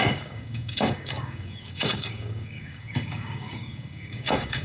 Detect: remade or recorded remade